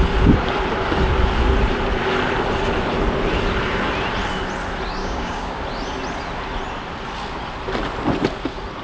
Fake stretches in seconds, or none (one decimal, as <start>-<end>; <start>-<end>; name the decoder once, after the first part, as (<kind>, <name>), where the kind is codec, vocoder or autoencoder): 5.0-5.6 (codec, DAC)